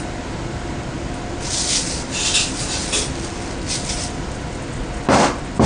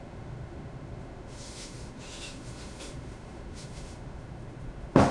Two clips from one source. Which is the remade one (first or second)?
second